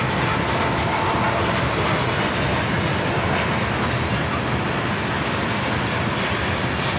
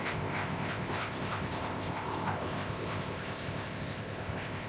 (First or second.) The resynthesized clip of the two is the second